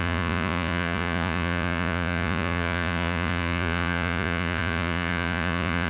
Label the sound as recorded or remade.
remade